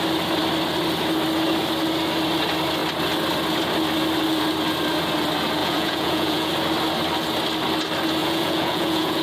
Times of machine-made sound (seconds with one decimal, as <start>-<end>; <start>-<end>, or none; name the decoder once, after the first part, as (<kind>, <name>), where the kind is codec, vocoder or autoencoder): 5.6-6.5 (vocoder, Vocos); 8.2-9.2